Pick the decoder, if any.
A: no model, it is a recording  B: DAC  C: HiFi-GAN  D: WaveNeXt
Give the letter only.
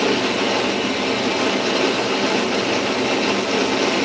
A